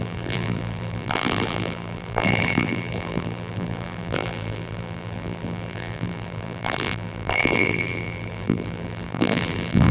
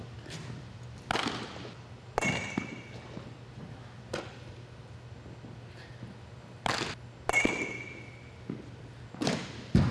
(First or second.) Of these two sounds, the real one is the second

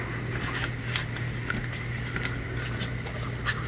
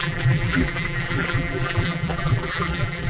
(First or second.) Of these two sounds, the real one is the first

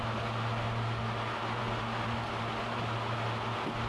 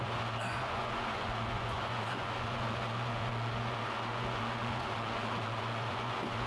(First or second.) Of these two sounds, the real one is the first